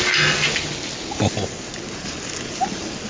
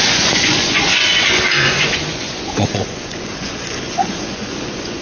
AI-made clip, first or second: second